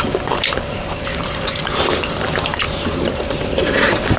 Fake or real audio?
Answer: fake